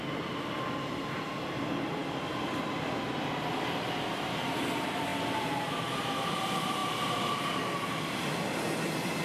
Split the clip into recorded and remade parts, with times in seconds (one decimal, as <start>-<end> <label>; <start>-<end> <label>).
0.0-9.2 recorded